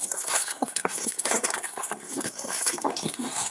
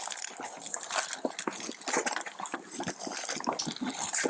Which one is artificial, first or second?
first